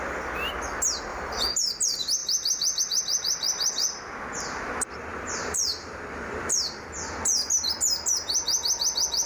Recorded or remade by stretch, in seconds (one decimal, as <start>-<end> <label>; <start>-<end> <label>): 0.0-1.1 recorded; 1.1-1.7 remade; 1.7-5.1 recorded; 5.1-6.5 remade; 6.5-9.3 recorded